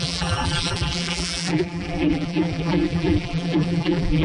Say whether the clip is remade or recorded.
remade